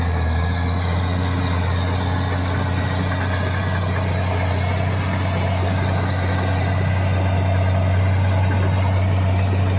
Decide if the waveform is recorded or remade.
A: recorded